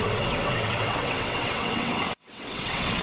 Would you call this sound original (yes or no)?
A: no